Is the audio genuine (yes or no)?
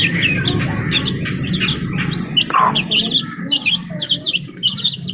yes